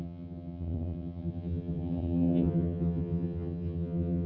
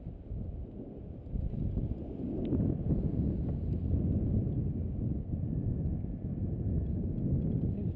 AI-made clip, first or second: first